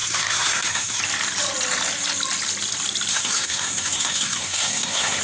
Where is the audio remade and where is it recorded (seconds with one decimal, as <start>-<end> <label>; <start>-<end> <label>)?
0.0-1.0 remade; 1.0-3.1 recorded; 3.1-5.2 remade

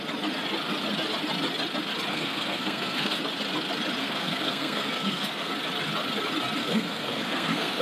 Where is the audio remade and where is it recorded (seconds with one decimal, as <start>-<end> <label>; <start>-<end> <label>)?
0.0-2.1 recorded; 2.1-3.2 remade; 3.2-4.0 recorded; 4.0-5.5 remade; 5.5-6.6 recorded; 6.6-7.8 remade

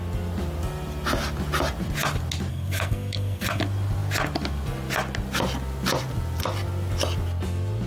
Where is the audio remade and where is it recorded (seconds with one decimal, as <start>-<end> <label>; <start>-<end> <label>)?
0.0-2.5 recorded; 2.5-3.6 remade; 3.6-7.9 recorded

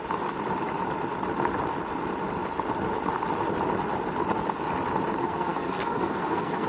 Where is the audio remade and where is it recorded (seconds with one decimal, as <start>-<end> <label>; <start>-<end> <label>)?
0.0-5.2 recorded; 5.2-6.7 remade